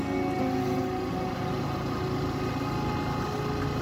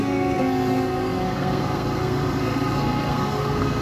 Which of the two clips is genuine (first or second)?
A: first